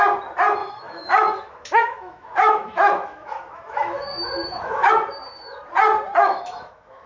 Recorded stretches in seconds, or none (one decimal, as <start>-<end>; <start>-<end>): 0.0-0.6; 4.9-6.2